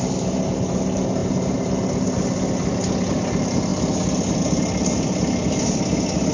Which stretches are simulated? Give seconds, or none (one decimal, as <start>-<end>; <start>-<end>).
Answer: none